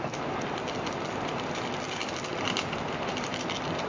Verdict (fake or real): real